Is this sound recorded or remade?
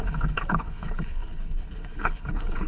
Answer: remade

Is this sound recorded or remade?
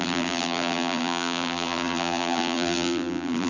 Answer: remade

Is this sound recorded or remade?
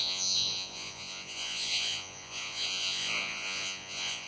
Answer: remade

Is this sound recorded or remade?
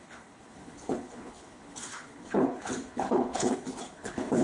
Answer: remade